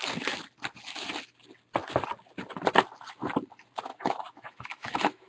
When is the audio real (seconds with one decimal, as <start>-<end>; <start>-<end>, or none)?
0.0-3.9